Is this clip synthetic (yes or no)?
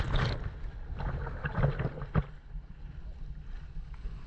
no